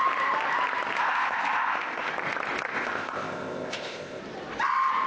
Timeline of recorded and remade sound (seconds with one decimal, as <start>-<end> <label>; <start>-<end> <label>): 0.0-1.0 recorded; 1.0-2.1 remade; 2.1-2.7 recorded; 2.7-4.2 remade; 4.2-5.1 recorded